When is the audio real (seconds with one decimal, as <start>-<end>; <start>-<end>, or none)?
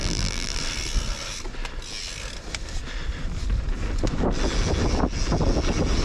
0.6-6.0